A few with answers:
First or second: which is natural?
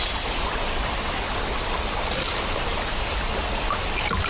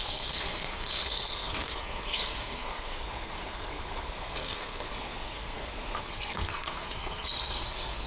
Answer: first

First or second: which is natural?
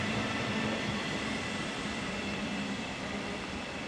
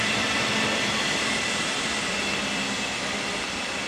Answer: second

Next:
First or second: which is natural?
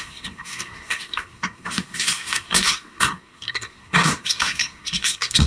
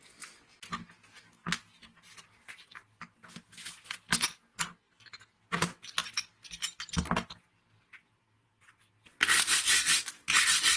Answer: second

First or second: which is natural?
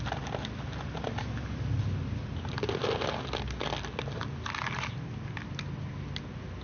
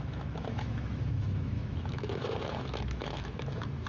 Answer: first